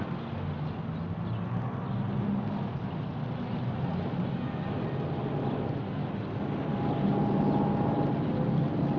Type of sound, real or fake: real